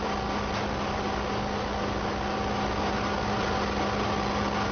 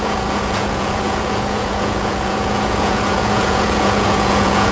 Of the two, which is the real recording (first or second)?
first